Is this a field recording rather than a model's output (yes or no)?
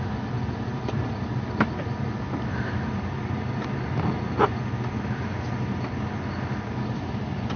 yes